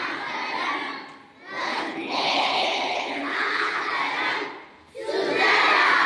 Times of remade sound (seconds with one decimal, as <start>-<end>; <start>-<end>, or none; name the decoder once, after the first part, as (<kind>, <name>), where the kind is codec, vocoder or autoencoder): 1.6-3.9 (codec, HILCodec)